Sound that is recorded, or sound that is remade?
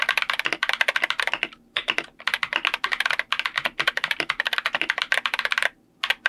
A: recorded